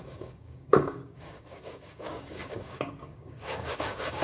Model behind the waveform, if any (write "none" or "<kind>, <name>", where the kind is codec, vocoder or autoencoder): codec, DAC